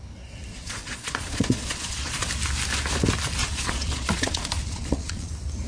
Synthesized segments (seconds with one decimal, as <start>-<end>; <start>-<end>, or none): 0.5-2.3; 3.4-5.3